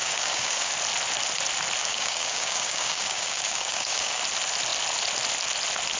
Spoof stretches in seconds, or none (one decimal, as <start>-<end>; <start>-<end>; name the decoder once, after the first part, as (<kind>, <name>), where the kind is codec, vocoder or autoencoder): 0.0-0.7 (codec, DAC); 1.8-4.2